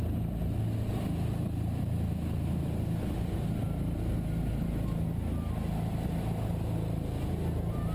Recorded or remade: recorded